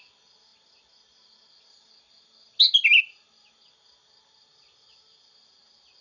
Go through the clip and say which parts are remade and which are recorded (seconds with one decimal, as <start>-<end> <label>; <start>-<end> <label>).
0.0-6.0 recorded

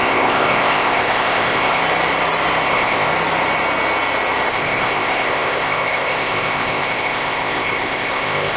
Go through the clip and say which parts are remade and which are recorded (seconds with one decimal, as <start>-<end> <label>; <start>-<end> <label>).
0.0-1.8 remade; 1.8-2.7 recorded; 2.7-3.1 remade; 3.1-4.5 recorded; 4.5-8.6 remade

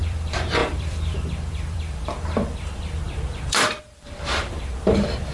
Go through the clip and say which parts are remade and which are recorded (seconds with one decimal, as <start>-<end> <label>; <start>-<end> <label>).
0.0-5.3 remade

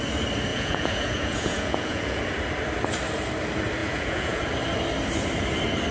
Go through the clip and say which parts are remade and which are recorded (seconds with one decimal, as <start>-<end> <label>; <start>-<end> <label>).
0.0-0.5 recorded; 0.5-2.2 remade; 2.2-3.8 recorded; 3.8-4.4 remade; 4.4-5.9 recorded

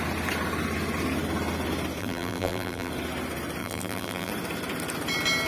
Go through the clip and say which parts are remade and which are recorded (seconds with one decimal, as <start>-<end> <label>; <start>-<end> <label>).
0.0-2.0 recorded; 2.0-2.9 remade; 2.9-3.6 recorded; 3.6-4.3 remade; 4.3-5.5 recorded